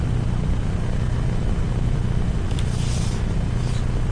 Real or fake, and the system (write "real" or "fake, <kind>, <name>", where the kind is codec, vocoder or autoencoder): real